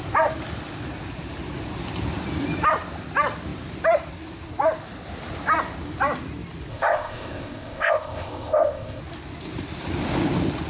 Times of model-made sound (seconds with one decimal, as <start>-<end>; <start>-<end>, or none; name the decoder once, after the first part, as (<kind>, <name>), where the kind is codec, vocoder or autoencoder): 6.7-9.0 (codec, ZipCodec)